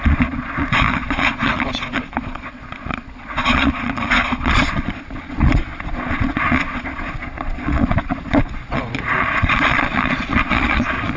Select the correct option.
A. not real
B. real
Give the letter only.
A